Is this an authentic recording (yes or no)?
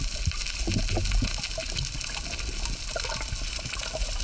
yes